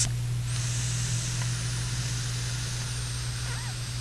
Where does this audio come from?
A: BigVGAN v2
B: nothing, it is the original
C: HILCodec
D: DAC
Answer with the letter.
B